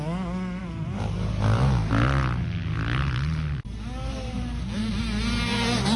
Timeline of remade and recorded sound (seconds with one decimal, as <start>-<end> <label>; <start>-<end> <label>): 0.0-0.6 recorded; 0.6-1.9 remade; 1.9-4.1 recorded; 4.1-5.0 remade; 5.0-6.0 recorded